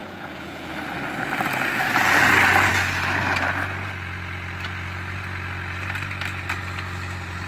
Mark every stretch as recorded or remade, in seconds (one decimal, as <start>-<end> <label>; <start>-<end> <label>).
0.0-0.7 remade; 0.7-7.5 recorded